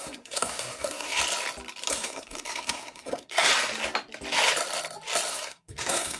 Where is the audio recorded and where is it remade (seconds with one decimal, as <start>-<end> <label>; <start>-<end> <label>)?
0.0-1.2 remade; 1.2-1.9 recorded; 1.9-3.5 remade; 3.5-5.3 recorded; 5.3-6.2 remade